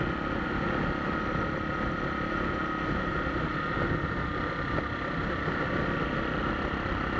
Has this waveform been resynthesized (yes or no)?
no